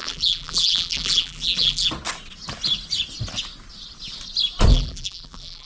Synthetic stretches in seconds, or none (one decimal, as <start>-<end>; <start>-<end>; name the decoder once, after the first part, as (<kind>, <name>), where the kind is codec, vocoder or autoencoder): 0.0-1.9 (vocoder, BigVGAN v2); 4.7-5.7